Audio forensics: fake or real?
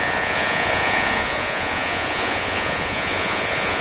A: fake